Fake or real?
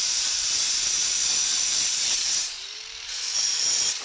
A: fake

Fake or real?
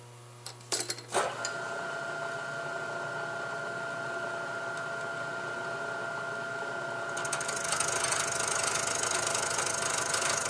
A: real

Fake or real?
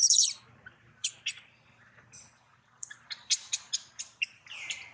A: fake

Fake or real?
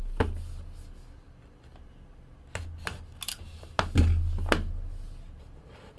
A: real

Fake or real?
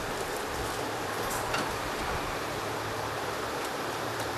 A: fake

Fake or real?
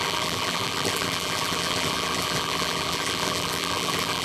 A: fake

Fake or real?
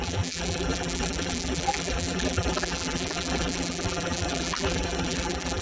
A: fake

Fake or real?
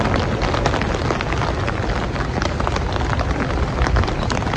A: fake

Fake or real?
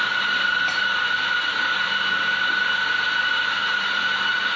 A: real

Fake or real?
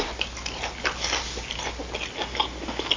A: real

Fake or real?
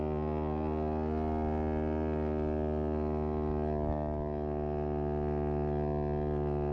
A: real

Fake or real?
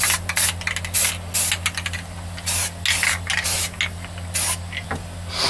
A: real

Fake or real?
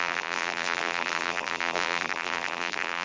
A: fake